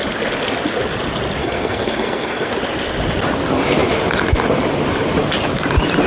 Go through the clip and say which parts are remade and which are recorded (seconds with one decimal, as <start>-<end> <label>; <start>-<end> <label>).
0.0-1.4 recorded; 1.4-2.5 remade; 2.5-6.1 recorded